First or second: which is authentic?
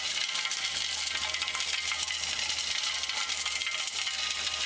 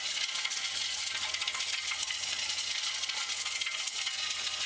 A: first